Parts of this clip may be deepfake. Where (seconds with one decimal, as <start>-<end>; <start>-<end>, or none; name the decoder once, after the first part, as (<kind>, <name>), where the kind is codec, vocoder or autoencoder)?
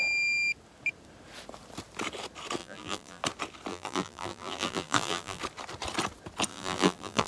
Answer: 2.6-3.2 (vocoder, BigVGAN v2); 3.7-5.4; 6.5-7.3